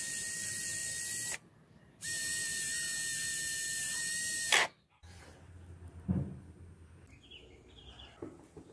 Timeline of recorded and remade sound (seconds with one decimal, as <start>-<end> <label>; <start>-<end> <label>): 0.0-8.7 recorded